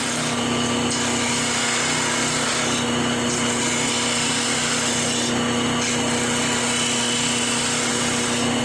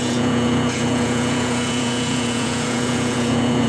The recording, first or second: first